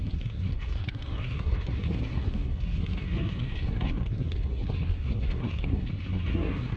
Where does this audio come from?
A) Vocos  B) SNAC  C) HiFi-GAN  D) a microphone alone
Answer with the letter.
B